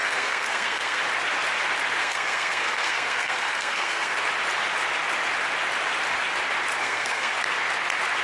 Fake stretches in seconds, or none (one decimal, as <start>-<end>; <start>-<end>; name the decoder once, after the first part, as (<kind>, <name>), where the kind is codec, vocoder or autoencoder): 0.0-1.0 (codec, SNAC); 2.0-4.1; 6.8-7.3